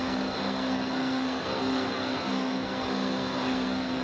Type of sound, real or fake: fake